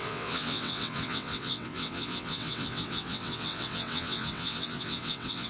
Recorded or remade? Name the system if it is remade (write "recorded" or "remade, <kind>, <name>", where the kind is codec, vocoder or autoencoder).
remade, vocoder, WaveNeXt